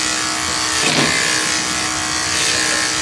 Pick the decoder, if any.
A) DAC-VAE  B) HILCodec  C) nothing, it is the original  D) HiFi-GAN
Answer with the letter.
C